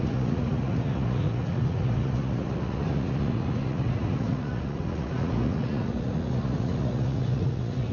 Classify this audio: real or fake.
fake